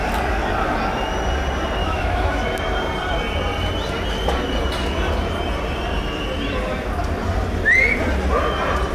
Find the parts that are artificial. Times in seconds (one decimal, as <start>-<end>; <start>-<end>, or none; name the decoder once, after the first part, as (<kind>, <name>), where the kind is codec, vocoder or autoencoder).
1.8-2.4 (autoencoder, DAC-VAE)